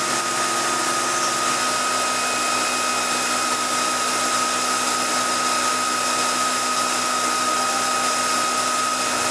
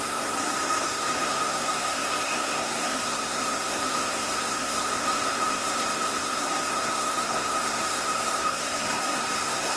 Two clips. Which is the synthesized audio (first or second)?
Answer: second